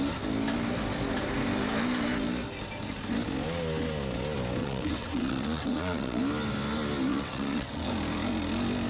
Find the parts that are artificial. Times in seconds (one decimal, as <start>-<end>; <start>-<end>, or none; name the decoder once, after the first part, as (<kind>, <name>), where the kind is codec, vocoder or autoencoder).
4.6-6.2 (vocoder, WaveNeXt); 7.1-7.9